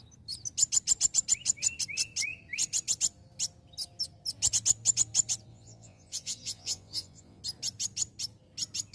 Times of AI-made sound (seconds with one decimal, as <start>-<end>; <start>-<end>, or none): 5.5-7.4